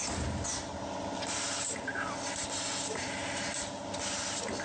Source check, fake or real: real